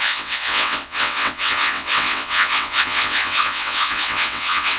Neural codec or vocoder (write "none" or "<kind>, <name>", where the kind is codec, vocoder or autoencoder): vocoder, WaveNeXt